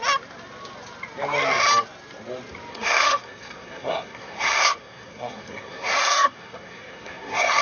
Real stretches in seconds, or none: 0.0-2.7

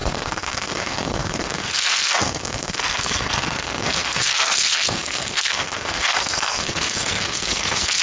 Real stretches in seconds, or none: none

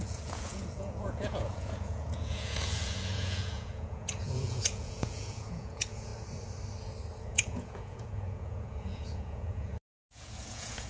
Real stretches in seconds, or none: 6.1-7.2

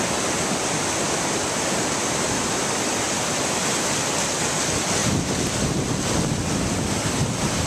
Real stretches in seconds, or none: 0.0-7.7

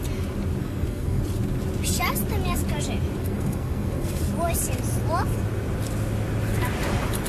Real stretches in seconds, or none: 0.0-0.6; 1.2-3.2; 4.2-7.3

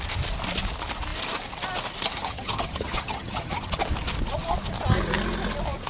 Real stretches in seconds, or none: 0.0-2.2; 3.8-5.9

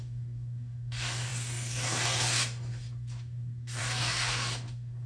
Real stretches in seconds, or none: none